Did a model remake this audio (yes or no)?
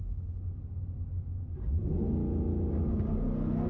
no